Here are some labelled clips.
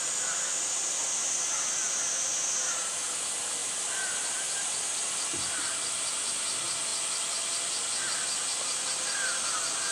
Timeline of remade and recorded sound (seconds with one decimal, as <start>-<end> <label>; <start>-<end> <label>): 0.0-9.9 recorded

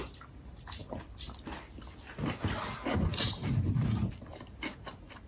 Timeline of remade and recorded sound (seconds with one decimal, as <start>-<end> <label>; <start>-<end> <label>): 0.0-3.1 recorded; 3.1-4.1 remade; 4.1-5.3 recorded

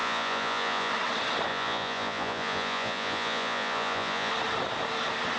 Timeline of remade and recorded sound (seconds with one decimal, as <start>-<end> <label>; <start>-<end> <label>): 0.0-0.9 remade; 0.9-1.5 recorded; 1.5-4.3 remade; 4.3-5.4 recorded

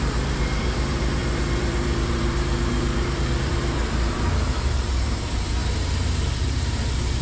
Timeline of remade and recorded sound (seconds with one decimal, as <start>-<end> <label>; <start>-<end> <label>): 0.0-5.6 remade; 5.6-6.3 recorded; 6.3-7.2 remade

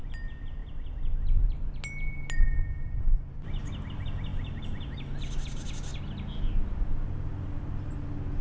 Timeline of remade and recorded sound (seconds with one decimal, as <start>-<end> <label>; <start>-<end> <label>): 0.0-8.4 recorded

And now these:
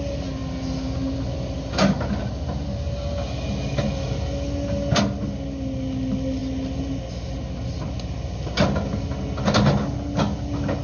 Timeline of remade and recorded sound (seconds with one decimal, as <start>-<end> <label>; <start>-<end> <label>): 0.0-10.8 recorded

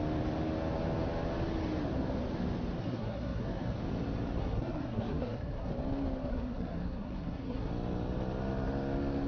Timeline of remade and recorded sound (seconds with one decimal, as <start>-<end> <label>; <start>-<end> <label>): 0.0-2.8 recorded; 2.8-3.8 remade; 3.8-4.4 recorded; 4.4-5.7 remade; 5.7-6.3 recorded; 6.3-7.7 remade; 7.7-9.3 recorded

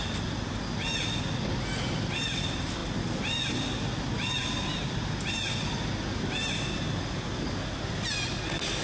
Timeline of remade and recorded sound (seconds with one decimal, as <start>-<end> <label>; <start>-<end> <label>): 0.0-8.8 recorded